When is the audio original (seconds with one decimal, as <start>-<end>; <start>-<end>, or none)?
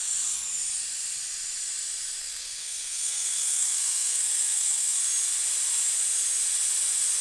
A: 0.0-2.2; 5.0-7.2